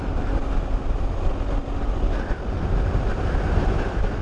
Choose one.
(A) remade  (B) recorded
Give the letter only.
B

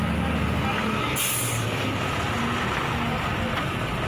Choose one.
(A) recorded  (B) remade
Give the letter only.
A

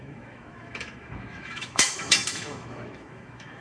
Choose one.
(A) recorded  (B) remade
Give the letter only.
B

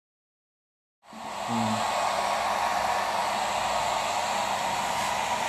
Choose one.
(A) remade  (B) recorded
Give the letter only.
B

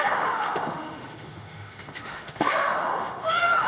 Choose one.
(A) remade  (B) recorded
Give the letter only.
A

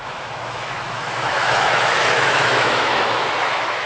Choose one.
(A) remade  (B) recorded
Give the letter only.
A